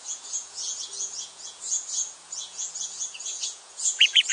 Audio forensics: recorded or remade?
remade